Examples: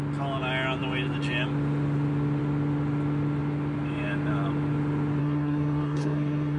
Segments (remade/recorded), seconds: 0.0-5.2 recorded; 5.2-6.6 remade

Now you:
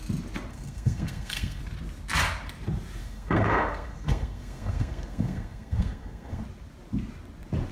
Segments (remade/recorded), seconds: 0.0-0.5 recorded; 0.5-1.6 remade; 1.6-3.0 recorded; 3.0-6.4 remade; 6.4-7.7 recorded

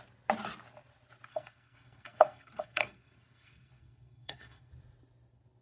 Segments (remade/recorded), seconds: 0.0-1.3 recorded; 1.3-4.7 remade; 4.7-5.6 recorded

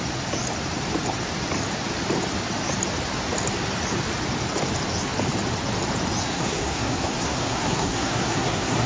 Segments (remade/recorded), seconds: 0.0-6.2 recorded; 6.2-8.9 remade